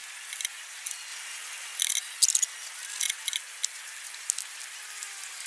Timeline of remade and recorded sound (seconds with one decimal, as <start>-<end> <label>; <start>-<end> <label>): 0.0-5.5 recorded